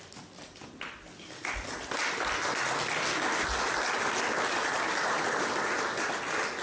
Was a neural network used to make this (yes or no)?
no